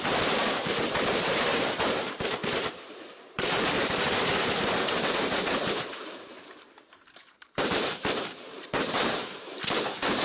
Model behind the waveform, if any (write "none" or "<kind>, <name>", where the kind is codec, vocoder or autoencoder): vocoder, BigVGAN v2